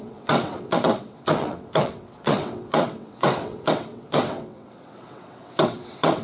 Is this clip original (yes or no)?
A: no